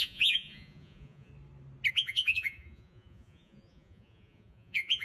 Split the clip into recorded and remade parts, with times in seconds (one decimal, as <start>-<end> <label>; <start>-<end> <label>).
0.0-1.3 remade; 1.3-1.9 recorded; 1.9-5.0 remade